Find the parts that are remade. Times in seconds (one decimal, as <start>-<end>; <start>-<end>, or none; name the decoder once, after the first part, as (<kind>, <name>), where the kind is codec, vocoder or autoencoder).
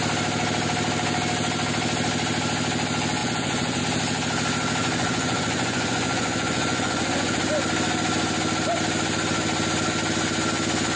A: 3.2-3.8 (vocoder, Vocos); 4.8-7.4